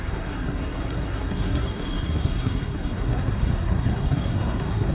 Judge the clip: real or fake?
fake